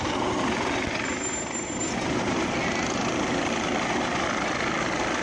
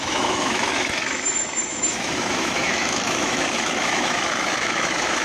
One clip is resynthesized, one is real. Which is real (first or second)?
first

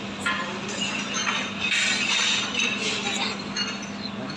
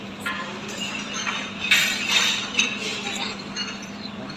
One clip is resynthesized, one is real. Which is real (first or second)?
first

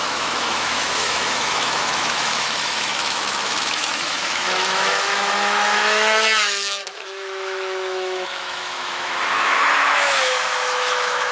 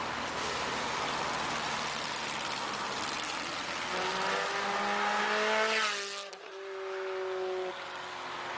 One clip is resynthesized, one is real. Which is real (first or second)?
second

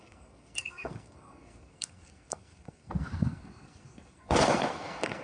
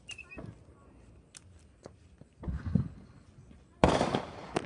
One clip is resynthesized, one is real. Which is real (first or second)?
second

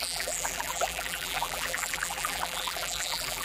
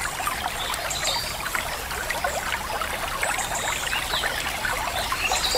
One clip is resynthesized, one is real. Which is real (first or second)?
second